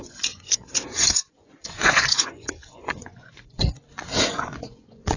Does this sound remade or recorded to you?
remade